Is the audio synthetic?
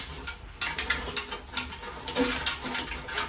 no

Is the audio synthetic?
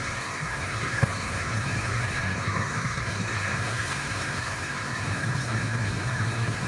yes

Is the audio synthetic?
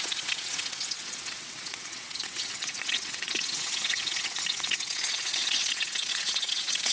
yes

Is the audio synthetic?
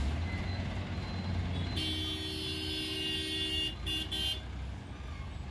no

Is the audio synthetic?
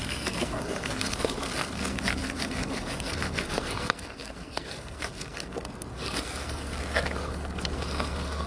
yes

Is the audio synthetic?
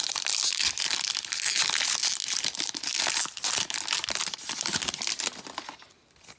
no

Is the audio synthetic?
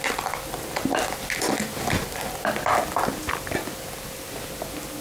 no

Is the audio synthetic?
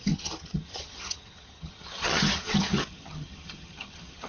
yes